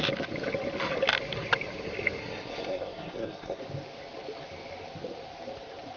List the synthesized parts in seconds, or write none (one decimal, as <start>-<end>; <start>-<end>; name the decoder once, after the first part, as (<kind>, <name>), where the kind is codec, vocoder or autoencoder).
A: 2.2-3.6 (codec, SNAC)

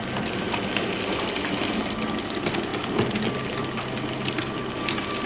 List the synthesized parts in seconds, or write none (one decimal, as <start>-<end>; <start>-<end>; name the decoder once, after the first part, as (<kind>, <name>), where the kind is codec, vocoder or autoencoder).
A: none

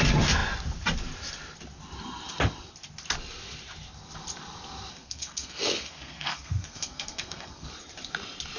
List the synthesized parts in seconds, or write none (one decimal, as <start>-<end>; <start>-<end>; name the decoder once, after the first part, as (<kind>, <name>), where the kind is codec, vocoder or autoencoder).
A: 4.9-7.7 (codec, SNAC)